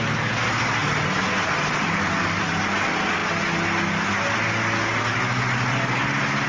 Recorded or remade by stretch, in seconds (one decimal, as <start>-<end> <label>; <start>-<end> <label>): 0.0-6.5 recorded